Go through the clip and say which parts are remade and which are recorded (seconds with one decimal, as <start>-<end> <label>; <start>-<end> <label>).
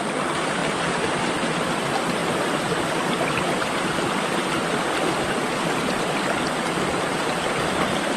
0.0-0.6 recorded; 0.6-1.3 remade; 1.3-7.1 recorded; 7.1-7.6 remade; 7.6-8.2 recorded